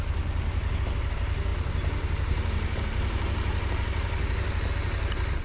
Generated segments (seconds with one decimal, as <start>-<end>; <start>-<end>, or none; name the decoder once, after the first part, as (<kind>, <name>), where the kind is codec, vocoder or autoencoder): 1.5-4.7 (vocoder, BigVGAN v2)